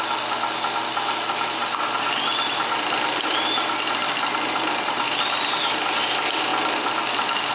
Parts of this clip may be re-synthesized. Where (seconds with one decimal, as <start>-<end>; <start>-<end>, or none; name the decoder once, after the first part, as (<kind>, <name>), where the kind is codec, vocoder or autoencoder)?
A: none